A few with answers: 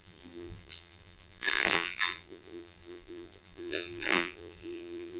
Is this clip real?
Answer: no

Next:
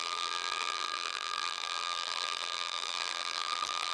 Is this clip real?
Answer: no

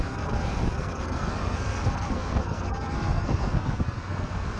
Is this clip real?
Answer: no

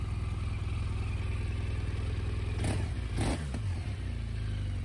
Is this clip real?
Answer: yes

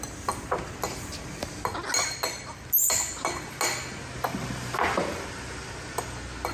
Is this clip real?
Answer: yes